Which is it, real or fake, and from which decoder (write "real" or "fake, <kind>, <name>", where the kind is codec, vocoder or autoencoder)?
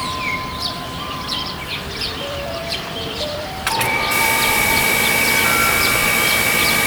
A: fake, vocoder, BigVGAN v2